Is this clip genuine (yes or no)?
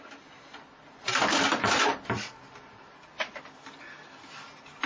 yes